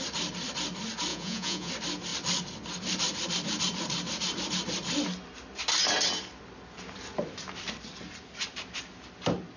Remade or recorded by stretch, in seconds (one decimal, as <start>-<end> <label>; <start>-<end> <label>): 0.0-1.1 recorded; 1.1-1.7 remade; 1.7-9.6 recorded